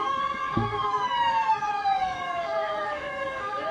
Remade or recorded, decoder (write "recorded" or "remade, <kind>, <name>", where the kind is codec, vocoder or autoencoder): remade, codec, DAC